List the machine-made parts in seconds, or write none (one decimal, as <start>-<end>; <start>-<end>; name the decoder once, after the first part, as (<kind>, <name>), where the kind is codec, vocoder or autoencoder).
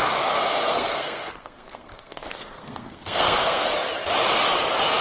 0.7-3.7 (codec, SNAC)